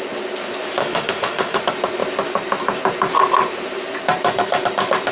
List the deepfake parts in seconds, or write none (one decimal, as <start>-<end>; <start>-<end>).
0.8-1.6